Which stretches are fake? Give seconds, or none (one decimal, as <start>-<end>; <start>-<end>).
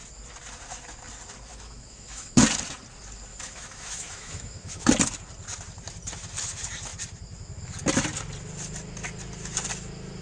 1.5-2.4; 3.3-4.9